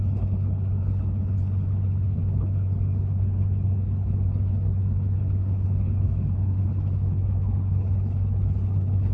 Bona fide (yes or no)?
no